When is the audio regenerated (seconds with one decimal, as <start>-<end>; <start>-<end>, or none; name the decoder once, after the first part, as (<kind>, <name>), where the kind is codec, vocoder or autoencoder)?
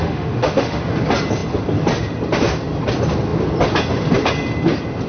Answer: 0.0-0.9 (autoencoder, DAC-VAE)